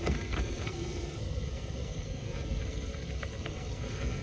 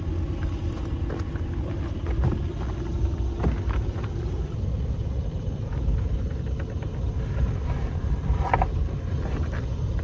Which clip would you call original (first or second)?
second